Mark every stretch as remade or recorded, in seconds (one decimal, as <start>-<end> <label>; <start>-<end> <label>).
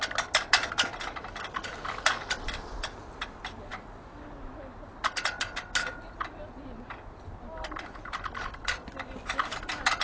0.0-10.0 recorded